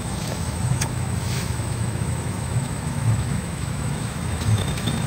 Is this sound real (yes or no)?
no